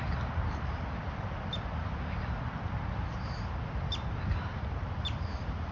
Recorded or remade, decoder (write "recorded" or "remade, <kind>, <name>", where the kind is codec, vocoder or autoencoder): recorded